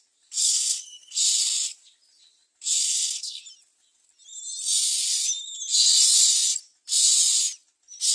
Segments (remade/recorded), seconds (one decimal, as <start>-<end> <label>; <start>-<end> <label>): 0.0-0.4 recorded; 0.4-1.2 remade; 1.2-2.8 recorded; 2.8-3.4 remade; 3.4-8.1 recorded